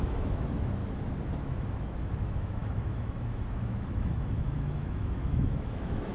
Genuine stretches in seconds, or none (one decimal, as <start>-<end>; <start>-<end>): 0.8-1.4